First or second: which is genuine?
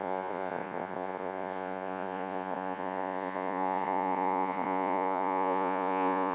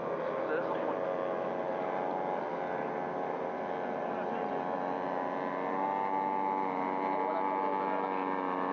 second